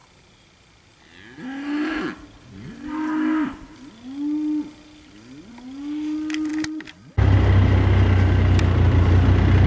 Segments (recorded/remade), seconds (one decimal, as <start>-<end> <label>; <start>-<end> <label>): 0.0-9.7 recorded